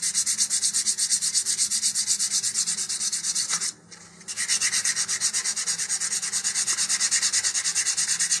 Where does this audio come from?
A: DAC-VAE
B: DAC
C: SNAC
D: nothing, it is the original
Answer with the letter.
D